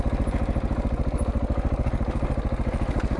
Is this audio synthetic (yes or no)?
no